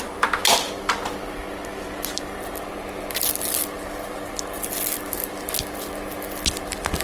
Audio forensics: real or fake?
real